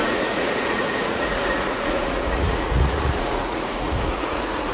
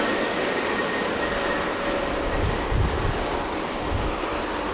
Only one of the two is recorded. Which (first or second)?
second